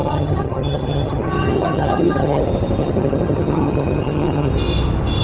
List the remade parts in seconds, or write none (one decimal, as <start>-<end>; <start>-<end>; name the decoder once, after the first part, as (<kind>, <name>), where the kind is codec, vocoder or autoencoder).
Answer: 0.0-2.4 (vocoder, HiFi-GAN); 2.8-4.5